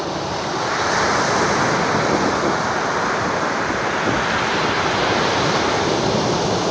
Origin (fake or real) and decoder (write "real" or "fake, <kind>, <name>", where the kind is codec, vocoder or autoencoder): real